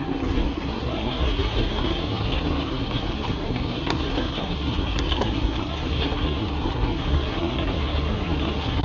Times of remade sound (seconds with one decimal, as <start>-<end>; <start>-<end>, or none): 0.0-8.8